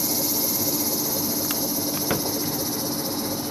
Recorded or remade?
recorded